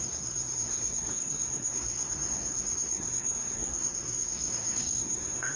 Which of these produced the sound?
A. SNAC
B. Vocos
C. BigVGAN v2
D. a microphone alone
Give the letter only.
A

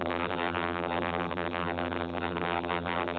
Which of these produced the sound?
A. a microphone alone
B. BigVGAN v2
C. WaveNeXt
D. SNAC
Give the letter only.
B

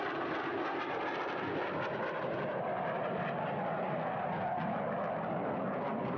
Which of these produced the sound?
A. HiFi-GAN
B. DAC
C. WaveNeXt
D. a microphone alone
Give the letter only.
D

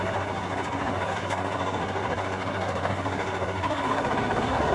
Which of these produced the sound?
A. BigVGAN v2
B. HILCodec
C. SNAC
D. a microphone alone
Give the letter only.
C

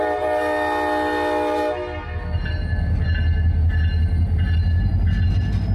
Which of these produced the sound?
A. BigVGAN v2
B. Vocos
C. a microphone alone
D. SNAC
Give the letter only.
C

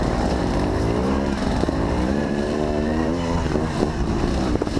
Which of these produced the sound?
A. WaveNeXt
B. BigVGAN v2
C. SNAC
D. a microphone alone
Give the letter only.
B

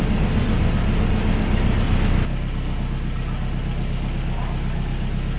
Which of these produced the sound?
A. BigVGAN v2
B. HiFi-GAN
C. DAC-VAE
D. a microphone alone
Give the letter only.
D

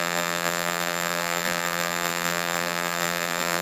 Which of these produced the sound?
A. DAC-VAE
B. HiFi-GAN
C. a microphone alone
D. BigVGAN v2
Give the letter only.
D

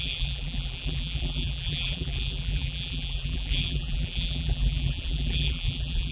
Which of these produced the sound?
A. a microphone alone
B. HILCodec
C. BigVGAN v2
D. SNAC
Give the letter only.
C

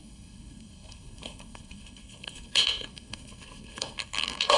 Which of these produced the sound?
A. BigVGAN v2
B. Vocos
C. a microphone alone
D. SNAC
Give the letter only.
D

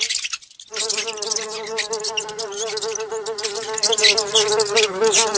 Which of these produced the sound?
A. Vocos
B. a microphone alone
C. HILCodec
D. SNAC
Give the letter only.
B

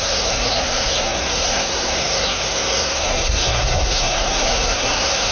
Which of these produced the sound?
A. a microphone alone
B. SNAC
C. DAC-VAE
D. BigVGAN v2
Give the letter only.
B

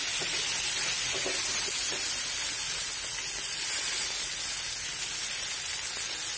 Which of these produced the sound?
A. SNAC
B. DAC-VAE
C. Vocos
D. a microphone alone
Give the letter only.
D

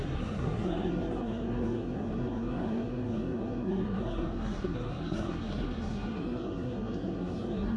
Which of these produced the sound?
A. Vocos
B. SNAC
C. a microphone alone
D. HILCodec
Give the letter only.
B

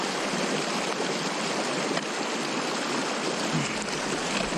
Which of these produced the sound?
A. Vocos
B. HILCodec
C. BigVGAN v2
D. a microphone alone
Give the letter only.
D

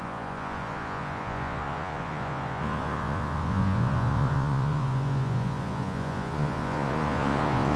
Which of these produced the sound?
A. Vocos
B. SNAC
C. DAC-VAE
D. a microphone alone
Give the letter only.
A